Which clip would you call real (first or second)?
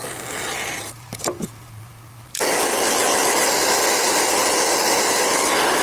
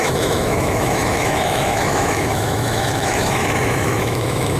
first